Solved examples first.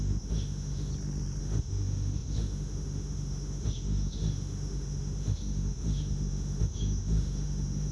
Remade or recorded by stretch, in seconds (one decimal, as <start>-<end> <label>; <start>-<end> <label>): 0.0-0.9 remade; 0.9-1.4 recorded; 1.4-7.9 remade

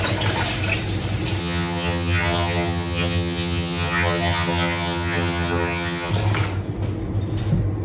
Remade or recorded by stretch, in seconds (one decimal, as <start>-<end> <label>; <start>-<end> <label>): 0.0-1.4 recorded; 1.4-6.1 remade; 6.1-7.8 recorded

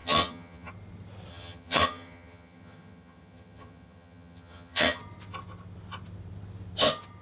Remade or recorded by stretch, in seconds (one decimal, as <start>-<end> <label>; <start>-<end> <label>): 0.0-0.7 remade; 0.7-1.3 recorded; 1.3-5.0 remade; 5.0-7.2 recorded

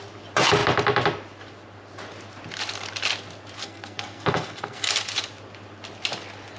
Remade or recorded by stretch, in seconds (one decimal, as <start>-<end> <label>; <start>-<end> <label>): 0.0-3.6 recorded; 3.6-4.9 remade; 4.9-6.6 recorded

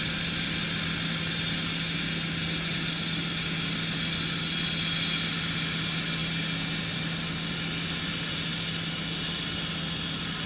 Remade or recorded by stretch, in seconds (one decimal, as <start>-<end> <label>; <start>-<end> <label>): 0.0-10.5 recorded